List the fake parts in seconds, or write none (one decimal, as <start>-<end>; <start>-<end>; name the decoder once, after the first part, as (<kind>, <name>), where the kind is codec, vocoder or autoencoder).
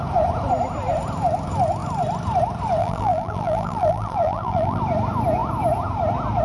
2.8-4.8 (vocoder, BigVGAN v2)